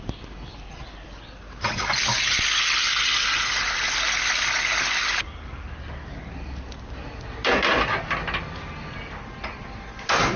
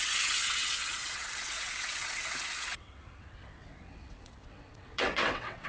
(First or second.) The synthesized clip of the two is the second